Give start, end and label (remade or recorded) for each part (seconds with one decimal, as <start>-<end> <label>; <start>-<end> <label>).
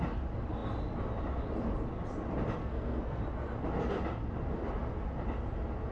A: 0.0-2.6 recorded; 2.6-3.2 remade; 3.2-5.9 recorded